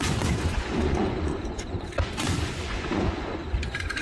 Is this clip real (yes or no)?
no